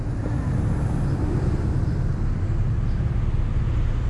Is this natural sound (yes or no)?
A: yes